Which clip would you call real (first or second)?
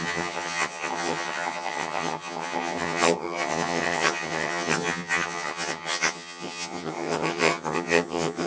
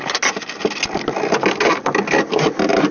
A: second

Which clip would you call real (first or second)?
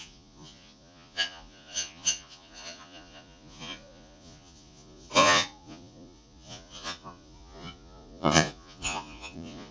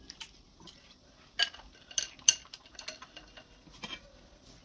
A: second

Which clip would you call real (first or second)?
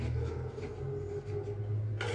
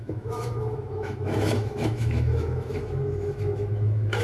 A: first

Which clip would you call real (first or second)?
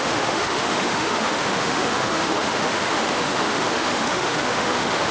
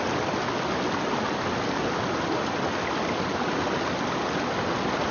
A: second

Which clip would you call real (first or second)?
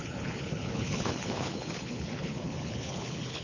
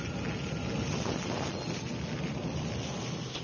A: second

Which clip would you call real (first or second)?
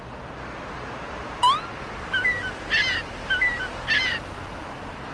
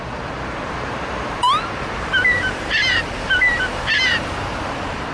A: first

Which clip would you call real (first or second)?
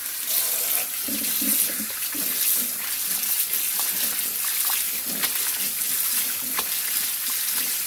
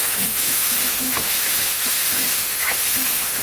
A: first